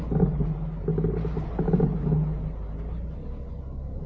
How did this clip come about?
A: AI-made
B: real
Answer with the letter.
B